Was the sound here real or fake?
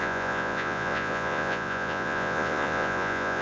fake